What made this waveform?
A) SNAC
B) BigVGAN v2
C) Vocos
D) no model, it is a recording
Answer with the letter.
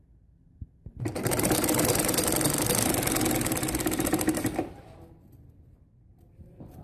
D